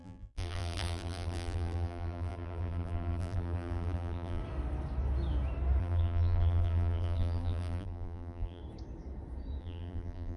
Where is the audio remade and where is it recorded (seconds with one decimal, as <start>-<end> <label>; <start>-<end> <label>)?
0.0-4.4 remade; 4.4-5.8 recorded; 5.8-8.6 remade; 8.6-9.6 recorded; 9.6-10.4 remade